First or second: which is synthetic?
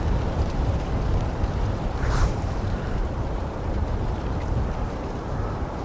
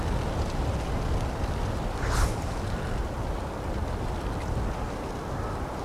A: first